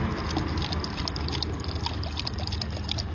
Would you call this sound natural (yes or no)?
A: yes